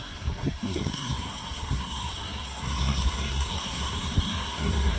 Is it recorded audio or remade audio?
remade